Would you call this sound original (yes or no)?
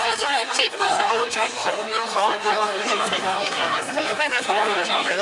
no